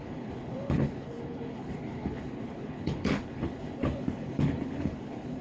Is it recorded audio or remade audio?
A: remade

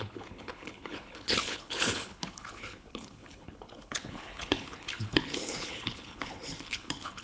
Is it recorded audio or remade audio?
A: remade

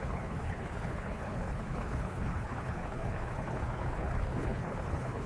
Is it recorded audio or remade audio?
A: remade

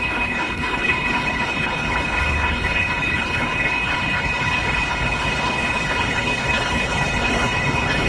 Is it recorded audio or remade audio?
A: remade